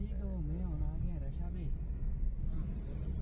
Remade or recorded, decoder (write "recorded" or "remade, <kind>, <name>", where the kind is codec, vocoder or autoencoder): recorded